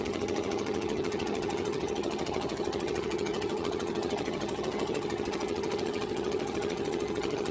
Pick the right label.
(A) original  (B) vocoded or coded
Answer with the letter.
B